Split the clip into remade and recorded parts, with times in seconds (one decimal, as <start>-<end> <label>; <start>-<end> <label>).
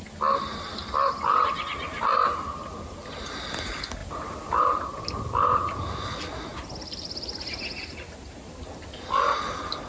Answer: 0.0-4.0 recorded; 4.0-4.6 remade; 4.6-6.5 recorded; 6.5-7.6 remade; 7.6-9.9 recorded